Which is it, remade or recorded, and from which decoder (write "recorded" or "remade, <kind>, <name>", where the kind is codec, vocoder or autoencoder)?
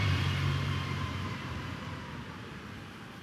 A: remade, vocoder, BigVGAN v2